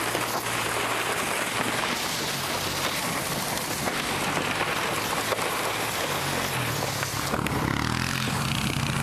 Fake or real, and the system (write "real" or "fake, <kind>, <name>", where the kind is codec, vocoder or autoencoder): real